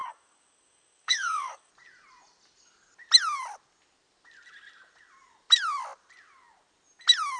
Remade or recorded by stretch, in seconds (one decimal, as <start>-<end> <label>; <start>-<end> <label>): 0.0-1.7 remade; 1.7-7.4 recorded

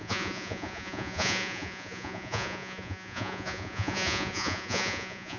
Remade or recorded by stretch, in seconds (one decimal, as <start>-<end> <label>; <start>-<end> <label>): 0.0-5.4 remade

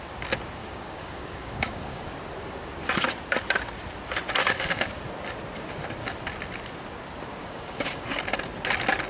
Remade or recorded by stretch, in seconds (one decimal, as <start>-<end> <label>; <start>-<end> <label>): 0.0-0.6 recorded; 0.6-2.1 remade; 2.1-4.4 recorded; 4.4-5.0 remade; 5.0-7.4 recorded; 7.4-8.0 remade; 8.0-9.1 recorded